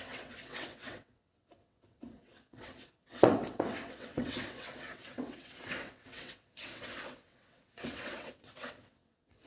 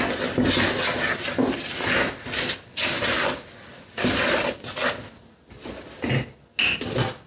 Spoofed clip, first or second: first